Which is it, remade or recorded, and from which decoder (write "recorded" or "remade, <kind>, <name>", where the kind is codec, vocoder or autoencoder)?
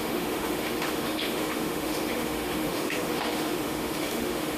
remade, autoencoder, DAC-VAE